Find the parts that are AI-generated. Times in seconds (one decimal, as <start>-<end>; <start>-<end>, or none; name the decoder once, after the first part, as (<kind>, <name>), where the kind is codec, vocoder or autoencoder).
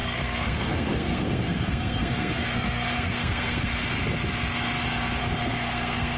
0.0-3.7 (codec, SNAC); 5.2-6.2